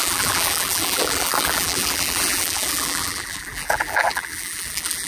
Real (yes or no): no